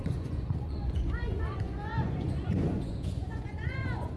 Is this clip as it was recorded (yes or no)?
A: no